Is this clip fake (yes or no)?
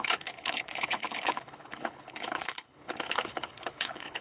yes